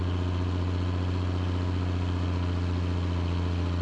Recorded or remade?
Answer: recorded